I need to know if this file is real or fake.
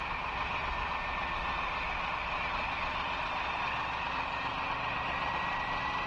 real